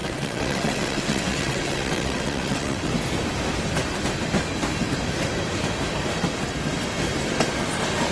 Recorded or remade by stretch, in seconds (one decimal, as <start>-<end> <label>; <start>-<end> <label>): 0.0-2.9 remade; 2.9-8.1 recorded